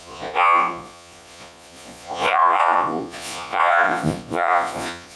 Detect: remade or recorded remade